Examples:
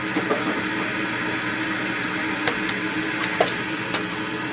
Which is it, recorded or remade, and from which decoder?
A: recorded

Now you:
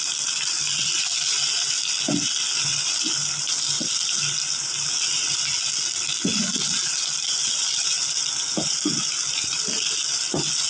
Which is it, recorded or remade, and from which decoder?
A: recorded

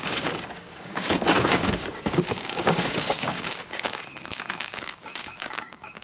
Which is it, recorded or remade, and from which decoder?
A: remade, codec, DAC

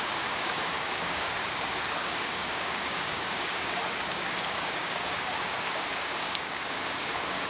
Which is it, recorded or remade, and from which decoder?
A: remade, codec, DAC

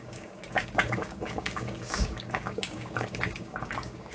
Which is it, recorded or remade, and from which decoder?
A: remade, codec, DAC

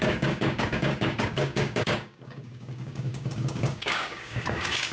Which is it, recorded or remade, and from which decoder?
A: remade, codec, DAC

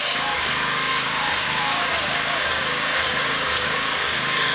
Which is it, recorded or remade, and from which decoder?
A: remade, codec, DAC